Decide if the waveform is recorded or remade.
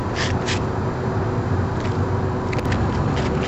remade